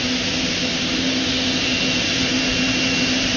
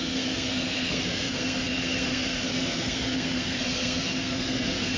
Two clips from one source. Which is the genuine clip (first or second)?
first